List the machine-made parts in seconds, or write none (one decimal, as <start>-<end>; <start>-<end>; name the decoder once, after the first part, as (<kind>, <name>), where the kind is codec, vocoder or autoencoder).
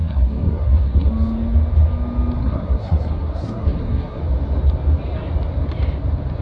0.0-1.1 (codec, SNAC); 2.4-4.2